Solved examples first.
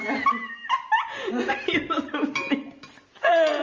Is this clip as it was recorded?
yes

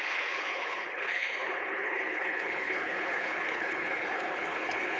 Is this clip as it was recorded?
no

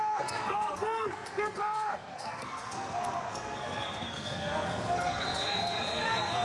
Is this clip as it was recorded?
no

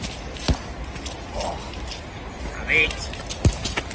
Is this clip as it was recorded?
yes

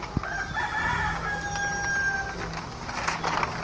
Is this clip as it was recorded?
yes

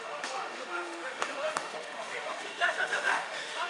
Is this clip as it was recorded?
no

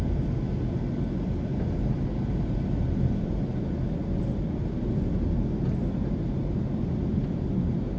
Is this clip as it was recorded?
yes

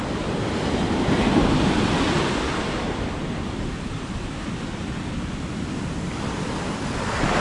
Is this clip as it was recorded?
no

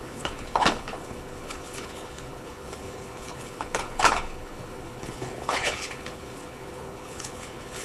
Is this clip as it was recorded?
no